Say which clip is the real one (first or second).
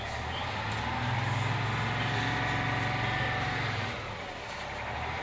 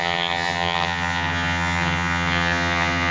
first